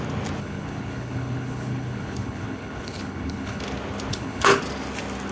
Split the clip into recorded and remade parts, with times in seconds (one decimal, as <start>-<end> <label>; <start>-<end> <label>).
0.0-0.4 recorded; 0.4-3.6 remade; 3.6-4.1 recorded; 4.1-4.6 remade; 4.6-5.3 recorded